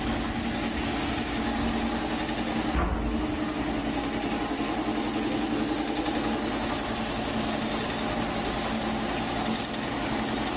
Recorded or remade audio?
recorded